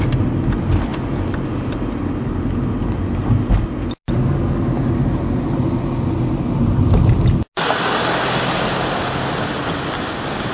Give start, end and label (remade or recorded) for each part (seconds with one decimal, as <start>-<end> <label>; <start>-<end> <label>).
0.0-10.5 recorded